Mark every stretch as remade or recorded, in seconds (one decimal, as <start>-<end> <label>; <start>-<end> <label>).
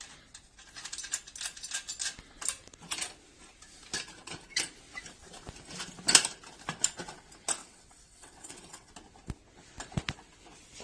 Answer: 0.0-7.6 recorded; 7.6-8.9 remade; 8.9-10.8 recorded